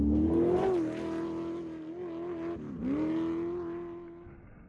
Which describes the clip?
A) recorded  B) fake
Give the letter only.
A